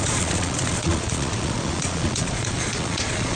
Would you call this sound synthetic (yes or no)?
yes